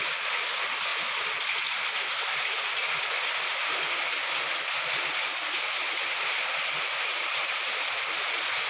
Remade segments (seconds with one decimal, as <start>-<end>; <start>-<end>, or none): none